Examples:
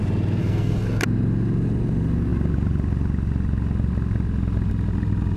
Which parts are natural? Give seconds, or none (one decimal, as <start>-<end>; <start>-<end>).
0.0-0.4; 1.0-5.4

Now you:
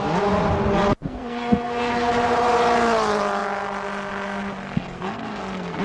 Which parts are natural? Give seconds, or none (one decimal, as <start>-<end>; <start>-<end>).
0.0-1.0; 2.1-4.6

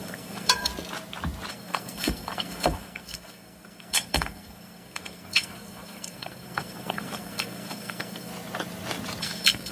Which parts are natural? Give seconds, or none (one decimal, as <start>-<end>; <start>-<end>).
0.7-1.5; 8.3-9.2

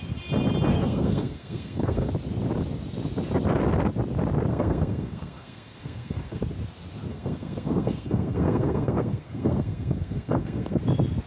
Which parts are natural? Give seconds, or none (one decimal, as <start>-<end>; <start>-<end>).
0.0-0.7; 2.1-4.5; 6.4-7.1; 10.8-11.3

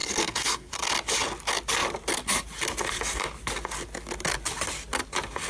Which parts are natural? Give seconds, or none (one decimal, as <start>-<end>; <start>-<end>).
0.7-5.5